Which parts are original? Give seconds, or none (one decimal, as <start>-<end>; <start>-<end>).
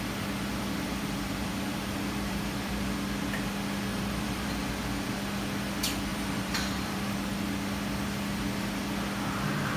0.0-0.5; 2.9-3.9; 4.7-6.1; 7.1-9.8